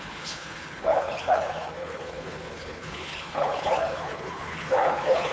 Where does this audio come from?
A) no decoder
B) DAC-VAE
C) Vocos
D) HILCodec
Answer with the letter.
D